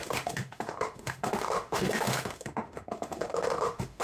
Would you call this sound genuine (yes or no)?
no